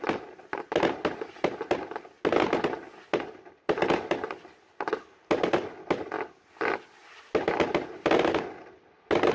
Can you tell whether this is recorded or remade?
recorded